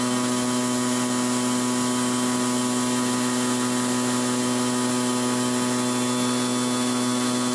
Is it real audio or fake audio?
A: real